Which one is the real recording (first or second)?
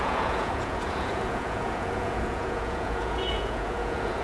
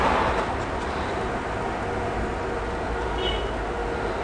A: second